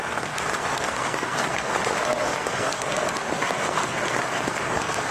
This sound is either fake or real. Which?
fake